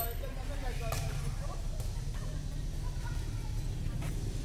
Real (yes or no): yes